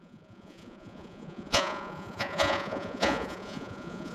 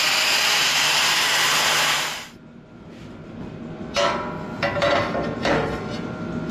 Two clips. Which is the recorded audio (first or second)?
second